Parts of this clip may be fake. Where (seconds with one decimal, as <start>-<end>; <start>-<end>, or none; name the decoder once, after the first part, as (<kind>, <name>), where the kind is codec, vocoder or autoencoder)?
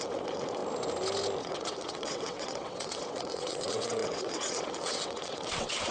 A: 0.0-0.6 (vocoder, WaveNeXt); 1.4-5.9